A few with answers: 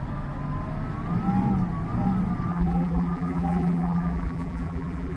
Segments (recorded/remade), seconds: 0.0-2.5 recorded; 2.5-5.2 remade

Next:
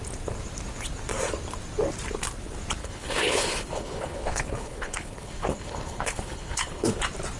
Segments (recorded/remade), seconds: 0.0-2.8 recorded; 2.8-7.0 remade; 7.0-7.4 recorded

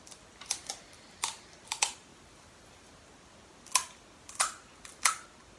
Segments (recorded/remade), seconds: 0.0-2.1 recorded; 2.1-2.9 remade; 2.9-5.6 recorded

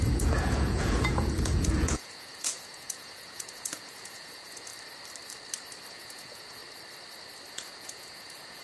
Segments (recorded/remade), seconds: 0.0-4.7 remade; 4.7-5.9 recorded; 5.9-6.6 remade; 6.6-7.5 recorded; 7.5-8.6 remade

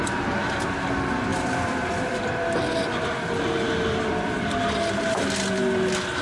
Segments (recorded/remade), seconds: 0.0-1.3 recorded; 1.3-2.2 remade; 2.2-6.2 recorded

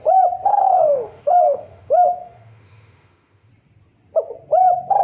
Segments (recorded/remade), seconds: 0.0-0.5 recorded; 0.5-3.5 remade; 3.5-5.0 recorded

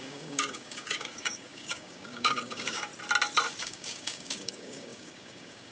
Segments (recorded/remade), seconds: 0.0-2.9 remade; 2.9-3.6 recorded; 3.6-5.7 remade